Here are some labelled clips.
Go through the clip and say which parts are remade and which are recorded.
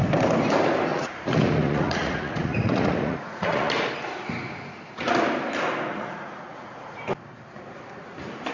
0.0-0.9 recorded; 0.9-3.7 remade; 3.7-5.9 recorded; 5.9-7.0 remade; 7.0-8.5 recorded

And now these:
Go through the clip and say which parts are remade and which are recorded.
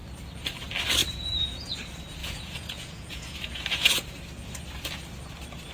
0.0-1.0 recorded; 1.0-1.7 remade; 1.7-2.2 recorded; 2.2-4.2 remade; 4.2-5.7 recorded